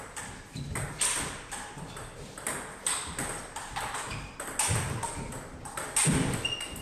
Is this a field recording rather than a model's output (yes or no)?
yes